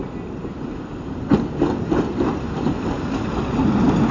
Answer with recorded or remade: recorded